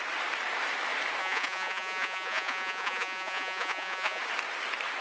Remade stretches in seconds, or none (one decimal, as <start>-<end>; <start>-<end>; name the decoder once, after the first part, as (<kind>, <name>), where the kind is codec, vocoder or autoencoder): 1.2-4.2 (vocoder, Vocos)